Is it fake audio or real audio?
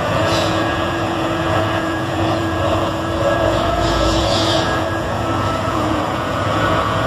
fake